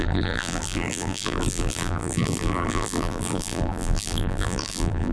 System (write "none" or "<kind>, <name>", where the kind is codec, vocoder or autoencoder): vocoder, BigVGAN v2